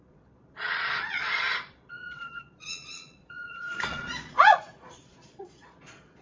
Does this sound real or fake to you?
fake